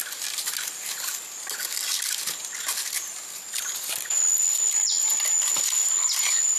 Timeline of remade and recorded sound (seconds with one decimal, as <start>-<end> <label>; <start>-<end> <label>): 0.0-6.6 recorded